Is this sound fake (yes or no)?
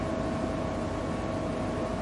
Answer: no